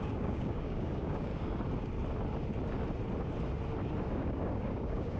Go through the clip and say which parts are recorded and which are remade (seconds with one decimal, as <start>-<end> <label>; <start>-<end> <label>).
0.0-1.3 remade; 1.3-4.1 recorded; 4.1-5.2 remade